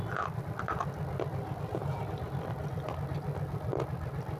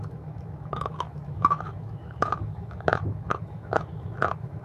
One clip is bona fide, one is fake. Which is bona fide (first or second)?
first